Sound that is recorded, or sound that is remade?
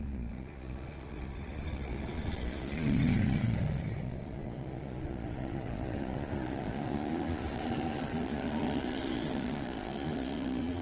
remade